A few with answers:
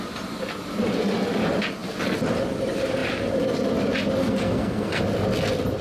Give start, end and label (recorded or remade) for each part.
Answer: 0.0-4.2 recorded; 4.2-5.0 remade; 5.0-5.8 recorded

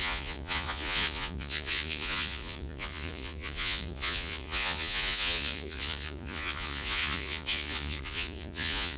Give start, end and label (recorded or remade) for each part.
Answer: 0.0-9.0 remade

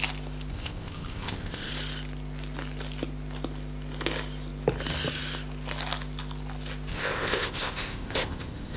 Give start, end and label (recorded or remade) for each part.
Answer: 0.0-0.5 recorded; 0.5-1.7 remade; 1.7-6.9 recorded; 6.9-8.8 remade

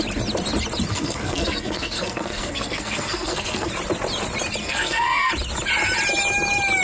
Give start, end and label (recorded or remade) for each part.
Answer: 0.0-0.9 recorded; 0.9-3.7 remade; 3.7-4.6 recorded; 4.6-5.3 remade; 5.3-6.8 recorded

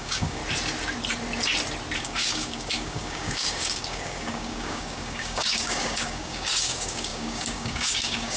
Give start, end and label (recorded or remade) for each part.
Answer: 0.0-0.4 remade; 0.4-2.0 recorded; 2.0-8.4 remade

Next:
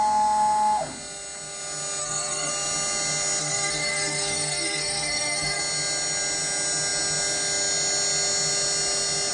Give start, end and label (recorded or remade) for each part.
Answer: 0.0-2.0 recorded; 2.0-2.5 remade; 2.5-3.4 recorded; 3.4-5.6 remade; 5.6-9.3 recorded

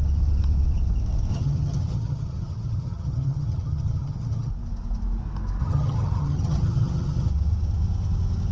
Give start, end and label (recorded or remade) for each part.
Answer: 0.0-1.3 recorded; 1.3-4.5 remade; 4.5-5.6 recorded; 5.6-7.3 remade; 7.3-8.5 recorded

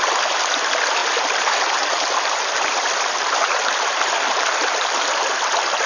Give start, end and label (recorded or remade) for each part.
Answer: 0.0-5.9 remade